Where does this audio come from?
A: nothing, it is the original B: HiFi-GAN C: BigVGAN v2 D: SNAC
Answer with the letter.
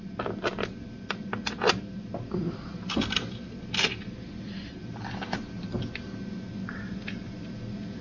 A